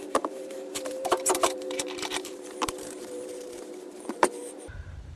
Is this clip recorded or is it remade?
remade